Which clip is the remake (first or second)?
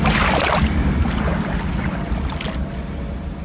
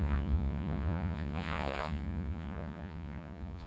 second